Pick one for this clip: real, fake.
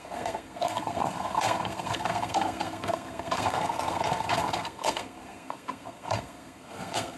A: fake